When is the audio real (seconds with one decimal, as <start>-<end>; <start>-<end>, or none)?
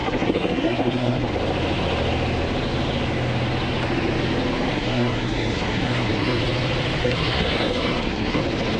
1.3-4.7; 6.4-7.0; 8.4-8.8